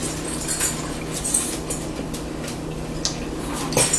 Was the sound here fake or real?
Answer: real